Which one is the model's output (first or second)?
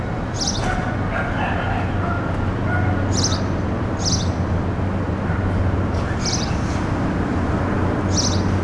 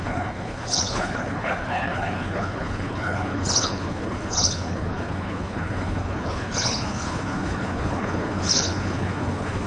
second